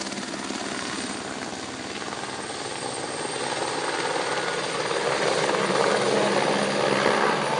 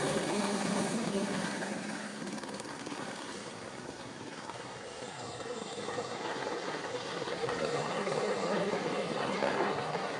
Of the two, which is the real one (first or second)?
first